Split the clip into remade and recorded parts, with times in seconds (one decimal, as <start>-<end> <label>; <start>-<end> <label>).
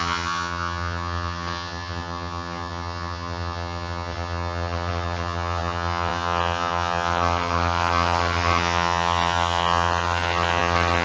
0.0-11.0 remade